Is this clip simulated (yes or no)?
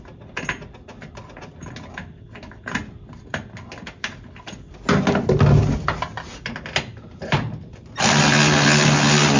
no